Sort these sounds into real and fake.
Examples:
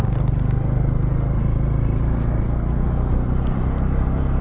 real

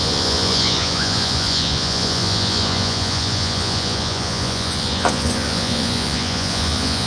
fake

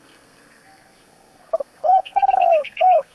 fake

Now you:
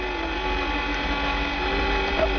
real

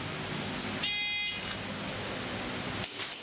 real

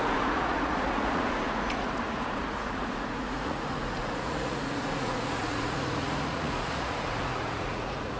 fake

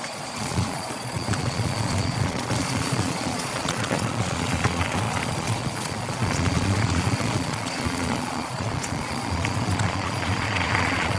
fake